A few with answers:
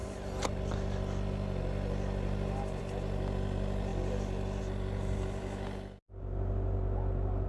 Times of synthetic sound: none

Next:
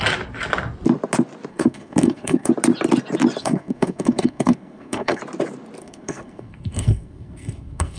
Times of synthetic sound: 1.5-2.5 (codec, SNAC); 3.4-5.2; 5.8-8.0

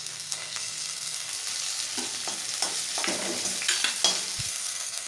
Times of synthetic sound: 0.0-1.3 (codec, SNAC); 4.4-5.1

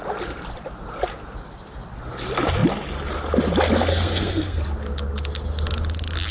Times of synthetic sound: 3.9-4.6 (codec, SNAC)